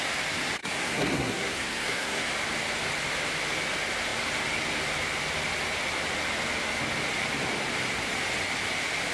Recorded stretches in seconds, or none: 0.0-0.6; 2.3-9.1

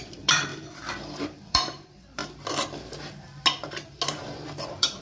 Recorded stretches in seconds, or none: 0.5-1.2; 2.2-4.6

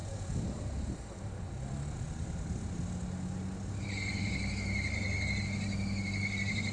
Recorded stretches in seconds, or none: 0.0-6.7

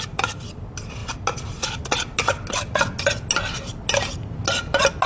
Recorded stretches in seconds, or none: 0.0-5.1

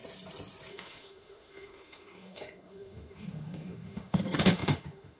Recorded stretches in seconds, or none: 0.0-0.7

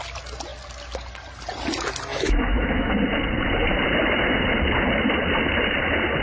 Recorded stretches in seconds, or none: 0.0-2.1; 2.9-6.2

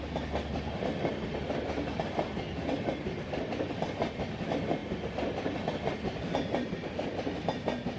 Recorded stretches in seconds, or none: 0.0-8.0